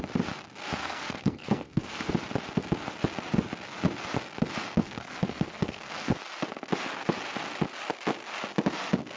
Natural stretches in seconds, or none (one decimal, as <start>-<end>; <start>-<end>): 0.0-0.8; 2.1-4.8; 6.1-9.2